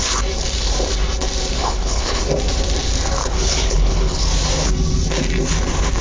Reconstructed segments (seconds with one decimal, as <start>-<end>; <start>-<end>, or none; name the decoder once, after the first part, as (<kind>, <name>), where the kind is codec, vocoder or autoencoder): 1.6-2.2 (codec, HILCodec); 3.2-4.2